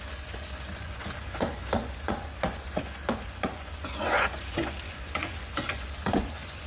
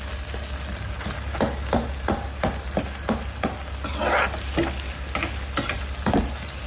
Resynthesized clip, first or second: first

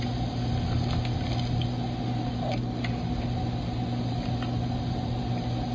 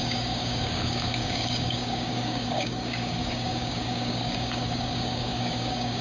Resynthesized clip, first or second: second